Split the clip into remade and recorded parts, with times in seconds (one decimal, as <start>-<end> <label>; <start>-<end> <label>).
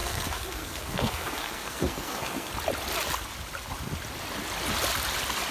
0.0-2.5 remade; 2.5-5.5 recorded